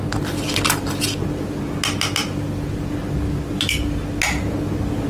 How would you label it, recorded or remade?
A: recorded